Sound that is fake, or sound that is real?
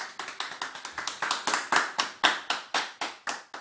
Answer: real